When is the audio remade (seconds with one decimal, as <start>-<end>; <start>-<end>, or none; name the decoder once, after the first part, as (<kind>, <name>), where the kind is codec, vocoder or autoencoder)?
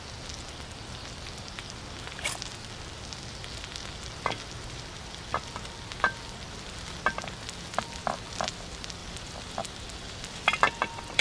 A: 9.0-11.2 (vocoder, BigVGAN v2)